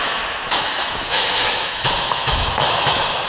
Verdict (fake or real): fake